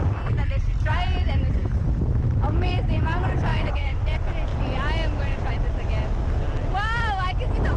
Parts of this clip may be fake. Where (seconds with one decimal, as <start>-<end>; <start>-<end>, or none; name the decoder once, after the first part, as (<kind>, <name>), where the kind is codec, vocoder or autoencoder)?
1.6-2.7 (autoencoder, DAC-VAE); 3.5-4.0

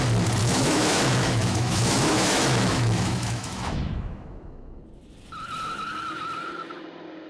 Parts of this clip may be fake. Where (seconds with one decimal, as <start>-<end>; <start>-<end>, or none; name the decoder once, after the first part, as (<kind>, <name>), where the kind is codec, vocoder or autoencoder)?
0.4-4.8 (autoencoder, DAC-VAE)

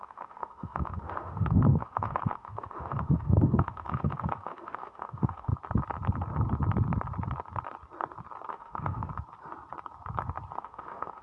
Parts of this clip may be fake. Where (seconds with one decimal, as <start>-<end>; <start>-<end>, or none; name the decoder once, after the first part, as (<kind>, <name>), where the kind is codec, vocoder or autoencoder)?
0.0-5.5 (autoencoder, DAC-VAE); 8.5-9.1; 10.6-11.2

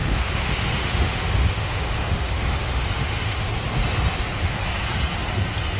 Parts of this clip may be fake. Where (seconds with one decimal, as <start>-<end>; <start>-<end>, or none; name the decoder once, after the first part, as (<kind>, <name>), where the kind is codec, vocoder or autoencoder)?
0.0-3.5 (autoencoder, DAC-VAE)